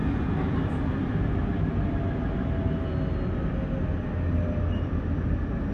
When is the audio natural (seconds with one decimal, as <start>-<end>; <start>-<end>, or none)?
0.0-5.7